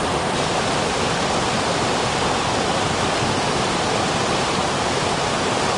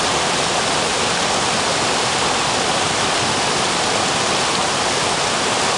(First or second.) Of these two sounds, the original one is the second